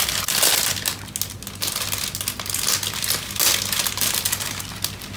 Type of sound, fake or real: real